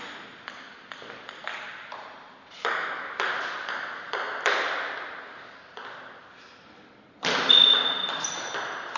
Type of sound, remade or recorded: recorded